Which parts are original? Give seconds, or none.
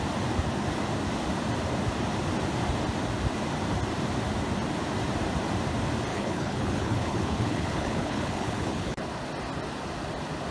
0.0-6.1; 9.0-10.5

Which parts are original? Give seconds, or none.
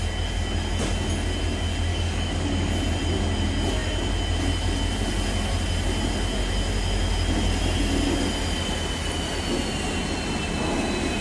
0.0-1.9; 2.7-11.2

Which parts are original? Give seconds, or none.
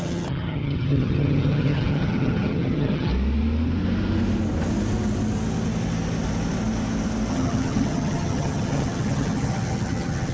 3.1-7.3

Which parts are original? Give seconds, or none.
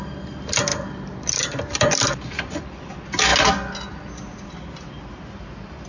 0.0-5.9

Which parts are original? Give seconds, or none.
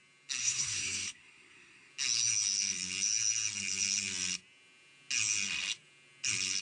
0.0-0.4; 1.9-6.6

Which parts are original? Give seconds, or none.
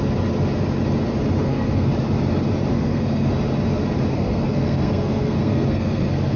0.0-1.4; 1.9-2.7; 3.3-4.1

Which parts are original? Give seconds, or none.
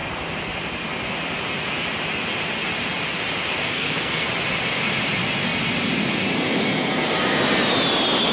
0.0-3.6; 4.3-8.3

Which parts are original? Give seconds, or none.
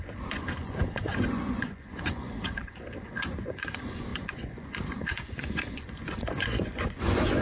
none